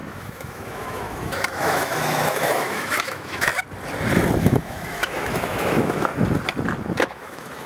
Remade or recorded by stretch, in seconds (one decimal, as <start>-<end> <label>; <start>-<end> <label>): 0.0-3.5 remade; 3.5-4.4 recorded; 4.4-6.1 remade; 6.1-7.0 recorded; 7.0-7.7 remade